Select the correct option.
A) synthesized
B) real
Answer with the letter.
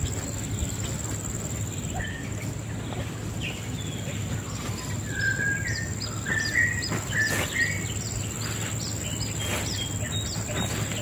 B